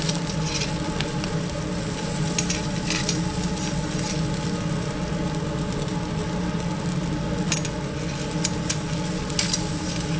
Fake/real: real